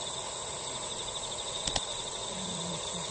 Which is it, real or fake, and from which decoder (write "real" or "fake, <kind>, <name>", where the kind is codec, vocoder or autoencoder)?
fake, vocoder, Vocos